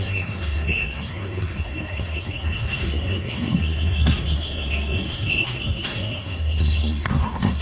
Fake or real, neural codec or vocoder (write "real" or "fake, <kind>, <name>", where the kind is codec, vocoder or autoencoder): fake, codec, SNAC